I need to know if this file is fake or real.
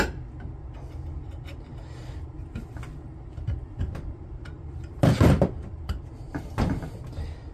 fake